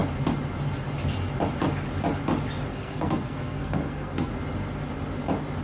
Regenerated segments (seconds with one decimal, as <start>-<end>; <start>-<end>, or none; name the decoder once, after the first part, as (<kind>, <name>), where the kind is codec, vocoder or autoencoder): 2.7-4.3 (codec, SNAC)